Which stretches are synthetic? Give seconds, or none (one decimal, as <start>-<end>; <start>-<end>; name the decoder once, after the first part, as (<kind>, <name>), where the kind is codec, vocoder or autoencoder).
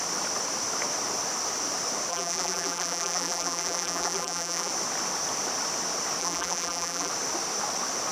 2.1-4.7 (vocoder, BigVGAN v2); 6.2-7.1